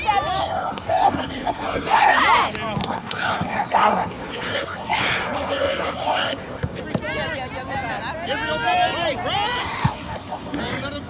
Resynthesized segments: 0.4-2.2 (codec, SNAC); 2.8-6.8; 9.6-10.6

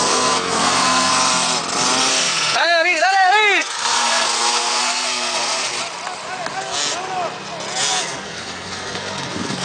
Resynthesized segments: 0.0-1.1 (codec, SNAC); 2.1-5.7; 8.0-9.6

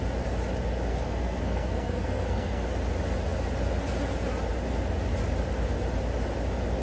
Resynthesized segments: 0.9-2.7 (codec, SNAC)

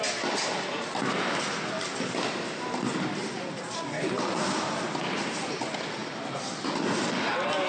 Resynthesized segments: none

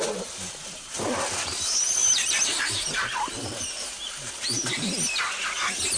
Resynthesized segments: 0.0-4.7 (vocoder, BigVGAN v2)